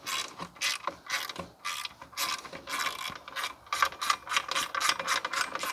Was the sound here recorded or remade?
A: recorded